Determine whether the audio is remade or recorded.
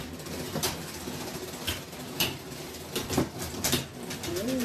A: recorded